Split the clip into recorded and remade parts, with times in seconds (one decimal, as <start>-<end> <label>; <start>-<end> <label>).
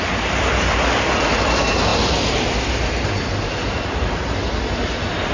0.0-5.3 recorded